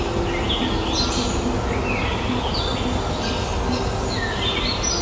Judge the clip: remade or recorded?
recorded